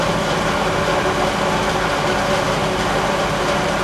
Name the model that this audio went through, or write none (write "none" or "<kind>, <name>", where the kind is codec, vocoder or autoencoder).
none